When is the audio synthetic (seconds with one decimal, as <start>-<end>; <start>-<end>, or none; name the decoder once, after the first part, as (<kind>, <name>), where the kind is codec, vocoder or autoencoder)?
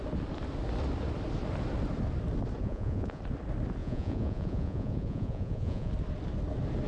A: 2.6-3.2 (vocoder, Vocos); 3.8-5.9